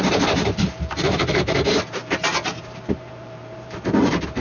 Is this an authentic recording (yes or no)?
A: no